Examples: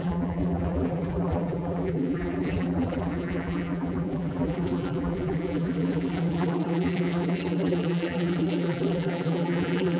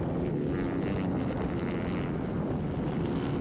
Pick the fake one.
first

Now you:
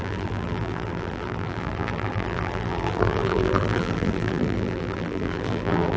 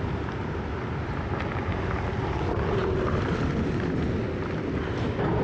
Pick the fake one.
first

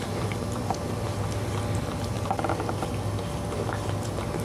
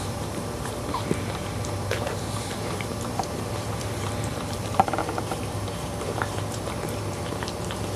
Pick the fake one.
second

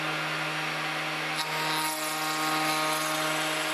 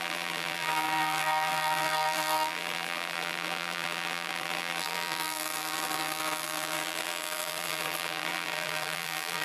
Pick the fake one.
second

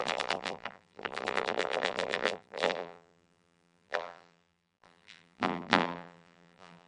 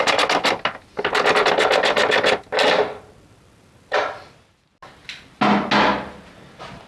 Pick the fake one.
first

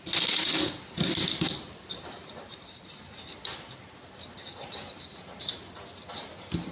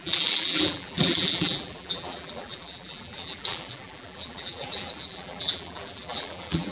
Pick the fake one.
second